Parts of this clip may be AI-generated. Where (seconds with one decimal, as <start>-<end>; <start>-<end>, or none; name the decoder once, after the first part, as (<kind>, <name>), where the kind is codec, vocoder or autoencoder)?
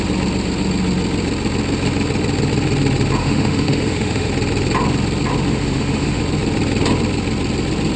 3.2-4.3 (autoencoder, DAC-VAE); 5.5-6.2